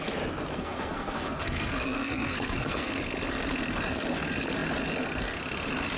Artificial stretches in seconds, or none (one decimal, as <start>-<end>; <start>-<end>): 0.5-2.9